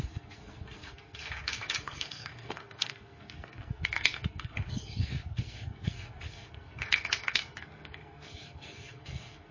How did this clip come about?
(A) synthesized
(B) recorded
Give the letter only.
A